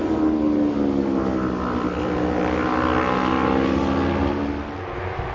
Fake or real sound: real